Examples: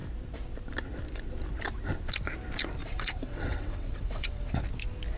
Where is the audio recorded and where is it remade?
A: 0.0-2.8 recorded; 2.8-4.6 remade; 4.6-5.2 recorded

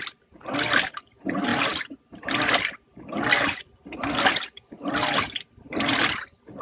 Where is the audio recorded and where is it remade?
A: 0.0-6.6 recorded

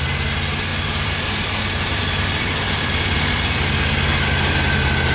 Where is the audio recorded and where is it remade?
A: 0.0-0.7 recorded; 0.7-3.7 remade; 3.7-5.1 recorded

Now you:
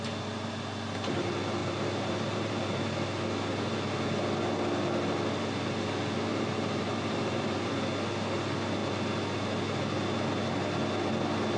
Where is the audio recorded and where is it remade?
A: 0.0-1.6 recorded; 1.6-2.6 remade; 2.6-6.3 recorded; 6.3-7.7 remade; 7.7-11.6 recorded

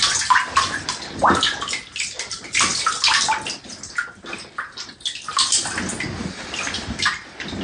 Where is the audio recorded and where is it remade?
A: 0.0-7.6 recorded